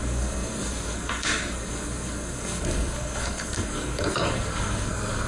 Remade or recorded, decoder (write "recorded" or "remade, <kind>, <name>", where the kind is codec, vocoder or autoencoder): remade, codec, SNAC